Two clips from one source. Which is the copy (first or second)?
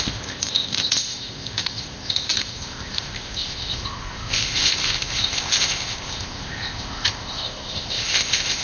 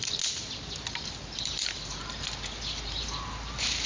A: first